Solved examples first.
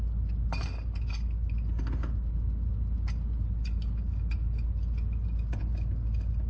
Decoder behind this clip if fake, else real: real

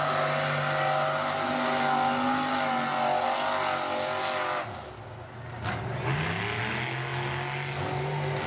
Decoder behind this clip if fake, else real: real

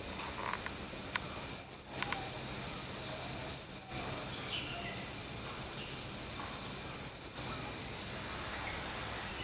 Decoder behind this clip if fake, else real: real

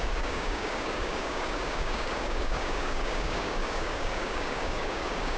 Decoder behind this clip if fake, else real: fake, codec, DAC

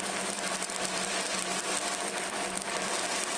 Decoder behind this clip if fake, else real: real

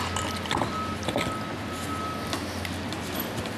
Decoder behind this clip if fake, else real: real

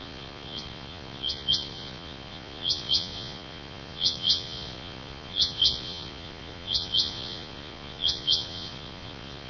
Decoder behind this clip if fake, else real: fake, vocoder, Vocos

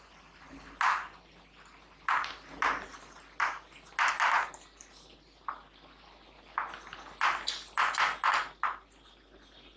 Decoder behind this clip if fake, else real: real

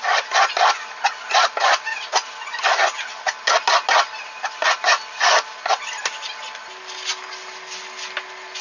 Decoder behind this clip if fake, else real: real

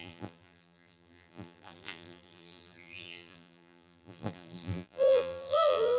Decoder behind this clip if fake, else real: fake, vocoder, BigVGAN v2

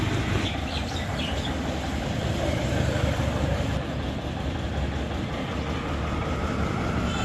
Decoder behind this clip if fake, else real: real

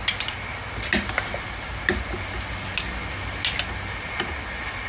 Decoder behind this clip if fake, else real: real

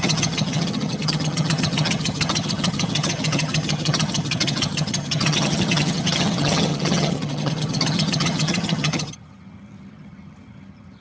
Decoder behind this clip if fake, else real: fake, vocoder, HiFi-GAN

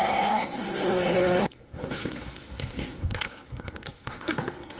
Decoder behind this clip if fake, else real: fake, codec, SNAC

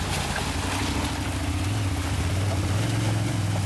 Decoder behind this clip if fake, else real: real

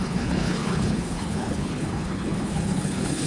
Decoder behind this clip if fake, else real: fake, codec, HILCodec